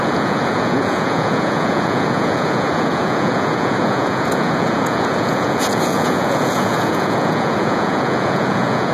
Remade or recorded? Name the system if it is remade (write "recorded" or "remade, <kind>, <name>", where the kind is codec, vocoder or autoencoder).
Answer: remade, vocoder, Vocos